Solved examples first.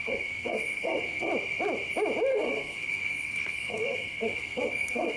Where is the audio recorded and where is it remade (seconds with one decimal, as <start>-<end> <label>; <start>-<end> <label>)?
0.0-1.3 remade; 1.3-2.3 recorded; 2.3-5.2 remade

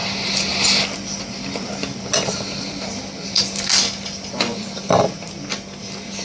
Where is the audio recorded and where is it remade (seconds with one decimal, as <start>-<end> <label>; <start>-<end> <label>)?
0.0-6.2 recorded

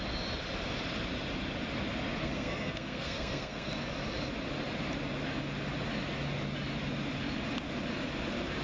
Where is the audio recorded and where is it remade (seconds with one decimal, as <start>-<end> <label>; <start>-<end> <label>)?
0.0-2.2 recorded; 2.2-3.7 remade; 3.7-8.6 recorded